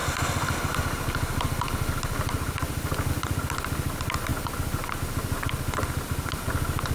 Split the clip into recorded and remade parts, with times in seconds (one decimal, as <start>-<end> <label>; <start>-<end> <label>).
0.0-6.9 recorded